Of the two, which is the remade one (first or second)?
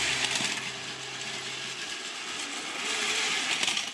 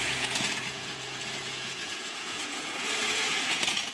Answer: second